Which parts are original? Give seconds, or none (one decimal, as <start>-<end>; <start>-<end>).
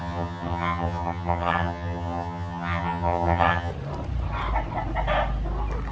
3.7-5.9